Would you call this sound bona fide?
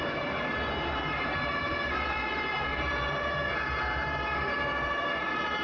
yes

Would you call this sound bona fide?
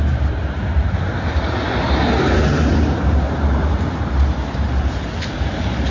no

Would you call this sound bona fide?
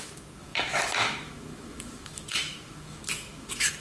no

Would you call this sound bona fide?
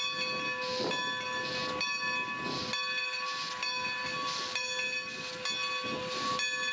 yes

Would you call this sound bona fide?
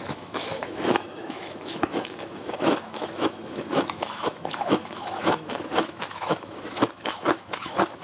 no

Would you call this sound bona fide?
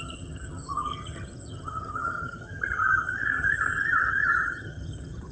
no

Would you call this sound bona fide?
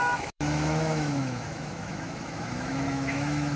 no